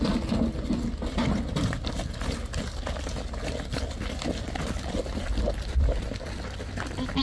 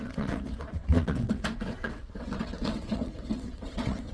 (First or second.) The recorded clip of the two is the first